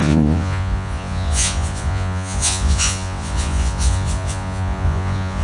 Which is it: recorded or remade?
remade